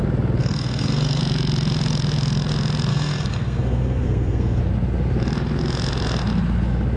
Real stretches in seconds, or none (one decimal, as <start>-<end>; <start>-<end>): 0.0-0.4; 1.2-2.9; 4.6-7.0